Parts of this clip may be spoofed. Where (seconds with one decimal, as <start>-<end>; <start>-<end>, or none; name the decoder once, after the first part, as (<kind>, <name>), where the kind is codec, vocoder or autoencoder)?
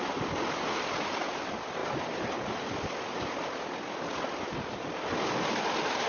none